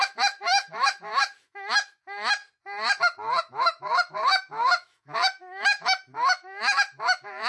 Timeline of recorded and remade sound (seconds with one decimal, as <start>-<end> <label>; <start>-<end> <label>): 0.0-2.4 remade; 2.4-3.5 recorded; 3.5-7.5 remade